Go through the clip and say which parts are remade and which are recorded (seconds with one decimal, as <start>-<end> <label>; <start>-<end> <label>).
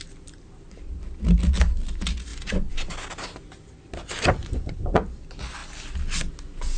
0.0-2.3 recorded; 2.3-2.9 remade; 2.9-4.4 recorded; 4.4-5.0 remade; 5.0-6.8 recorded